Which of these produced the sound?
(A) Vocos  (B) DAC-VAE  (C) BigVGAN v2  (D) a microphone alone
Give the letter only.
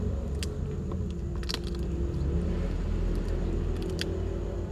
D